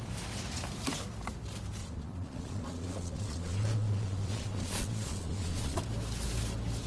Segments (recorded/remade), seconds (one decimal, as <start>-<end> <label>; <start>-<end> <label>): 0.0-1.8 recorded; 1.8-5.8 remade; 5.8-6.9 recorded